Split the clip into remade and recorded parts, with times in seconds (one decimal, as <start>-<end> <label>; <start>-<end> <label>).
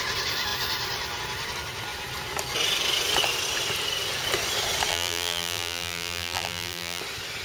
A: 0.0-4.9 recorded; 4.9-7.0 remade; 7.0-7.4 recorded